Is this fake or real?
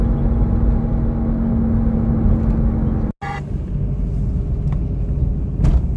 real